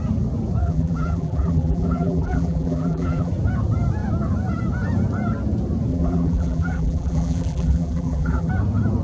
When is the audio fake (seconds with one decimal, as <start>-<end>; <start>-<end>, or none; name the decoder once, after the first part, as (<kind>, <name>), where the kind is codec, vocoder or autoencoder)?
0.6-3.3 (vocoder, BigVGAN v2); 5.9-8.5